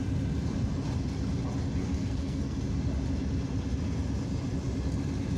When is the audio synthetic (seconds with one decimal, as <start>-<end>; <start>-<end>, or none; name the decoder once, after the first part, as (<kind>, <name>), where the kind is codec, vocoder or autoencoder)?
1.8-2.6 (codec, SNAC)